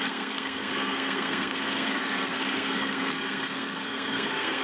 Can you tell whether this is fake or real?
fake